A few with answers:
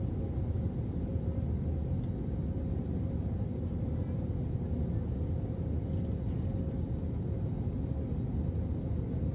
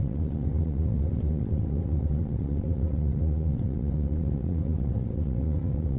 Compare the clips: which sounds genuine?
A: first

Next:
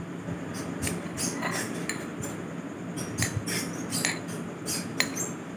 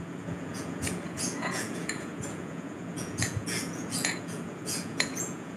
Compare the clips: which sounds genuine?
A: first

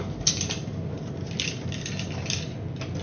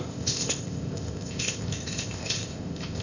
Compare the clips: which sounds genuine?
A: first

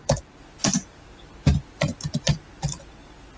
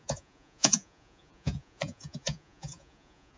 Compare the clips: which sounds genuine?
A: first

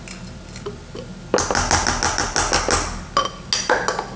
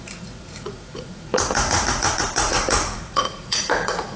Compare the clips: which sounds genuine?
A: first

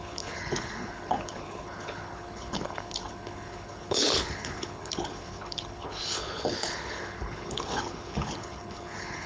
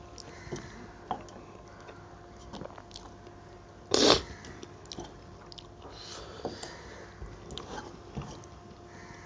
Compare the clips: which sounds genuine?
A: second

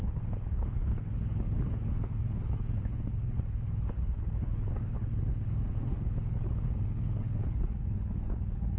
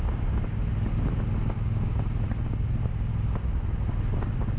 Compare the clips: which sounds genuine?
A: second